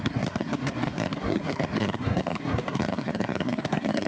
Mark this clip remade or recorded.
remade